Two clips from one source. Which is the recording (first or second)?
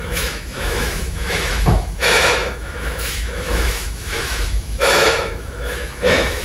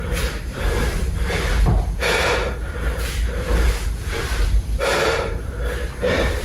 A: second